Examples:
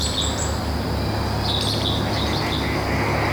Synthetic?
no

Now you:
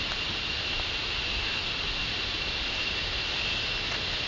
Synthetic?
no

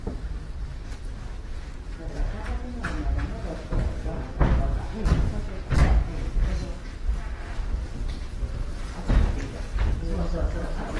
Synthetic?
no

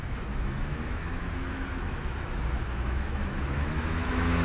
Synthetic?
yes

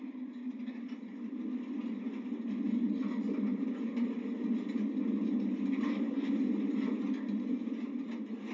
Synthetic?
no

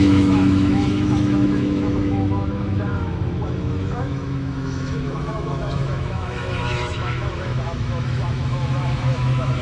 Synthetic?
yes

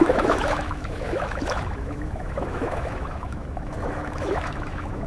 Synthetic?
yes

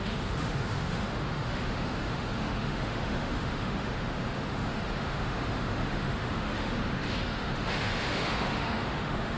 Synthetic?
yes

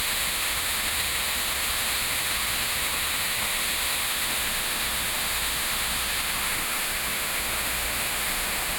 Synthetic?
yes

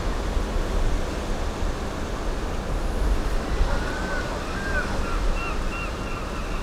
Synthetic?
no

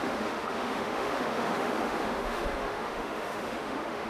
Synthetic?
yes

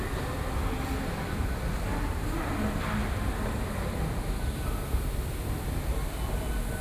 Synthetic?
no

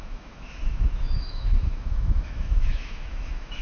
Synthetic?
yes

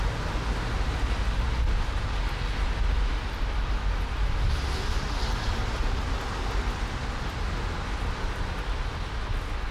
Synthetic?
no